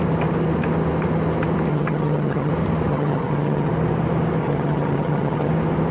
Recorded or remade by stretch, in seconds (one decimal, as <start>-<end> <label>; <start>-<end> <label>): 0.0-1.7 recorded; 1.7-2.5 remade; 2.5-2.9 recorded; 2.9-3.7 remade; 3.7-4.4 recorded; 4.4-5.5 remade; 5.5-5.9 recorded